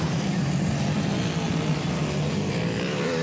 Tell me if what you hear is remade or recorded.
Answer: recorded